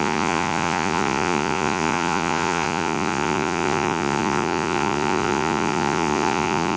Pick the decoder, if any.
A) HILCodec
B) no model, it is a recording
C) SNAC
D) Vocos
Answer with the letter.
D